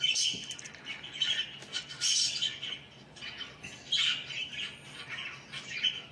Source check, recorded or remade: recorded